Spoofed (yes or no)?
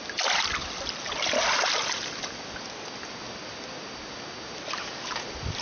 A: no